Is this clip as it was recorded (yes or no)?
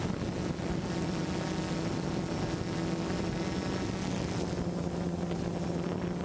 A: yes